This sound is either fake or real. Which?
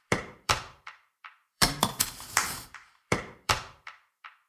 fake